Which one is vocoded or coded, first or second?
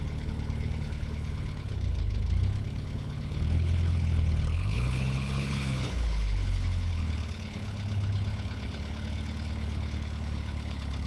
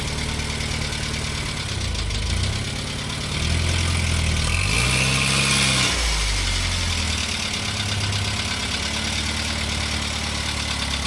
first